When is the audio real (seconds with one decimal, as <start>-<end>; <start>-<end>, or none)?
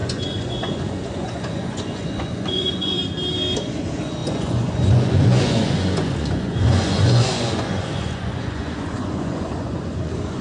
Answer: 3.0-3.6